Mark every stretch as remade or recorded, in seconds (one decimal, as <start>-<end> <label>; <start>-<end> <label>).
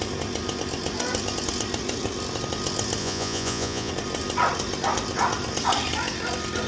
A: 0.0-3.0 recorded; 3.0-3.9 remade; 3.9-6.7 recorded